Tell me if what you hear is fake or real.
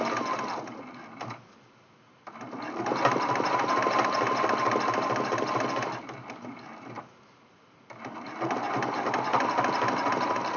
real